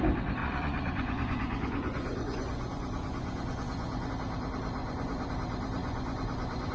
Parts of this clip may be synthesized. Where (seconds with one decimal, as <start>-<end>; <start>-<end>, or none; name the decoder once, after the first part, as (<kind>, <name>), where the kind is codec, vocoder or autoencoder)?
0.4-4.1 (vocoder, Vocos); 4.8-5.3; 5.8-6.7